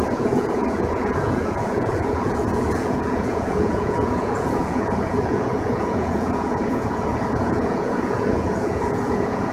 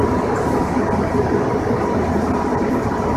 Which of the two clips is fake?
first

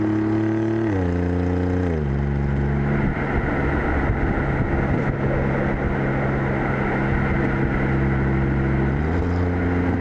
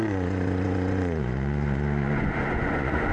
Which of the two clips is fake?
second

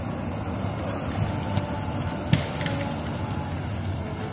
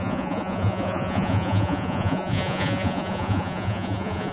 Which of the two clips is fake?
second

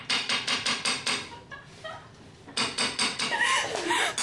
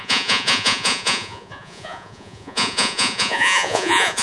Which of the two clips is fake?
second